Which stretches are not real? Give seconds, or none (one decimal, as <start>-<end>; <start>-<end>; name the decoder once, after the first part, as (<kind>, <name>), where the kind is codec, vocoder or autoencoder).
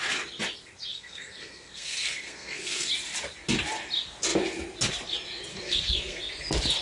0.9-2.9 (codec, SNAC); 5.5-6.2